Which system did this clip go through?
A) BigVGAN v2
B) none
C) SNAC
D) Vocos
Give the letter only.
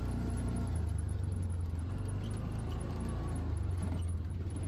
B